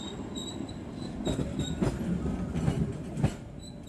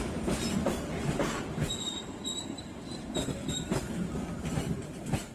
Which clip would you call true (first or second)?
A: first